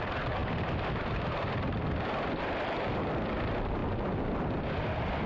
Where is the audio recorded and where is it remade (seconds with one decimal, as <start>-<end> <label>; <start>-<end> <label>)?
0.0-5.3 remade